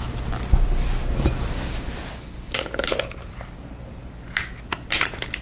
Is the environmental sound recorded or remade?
remade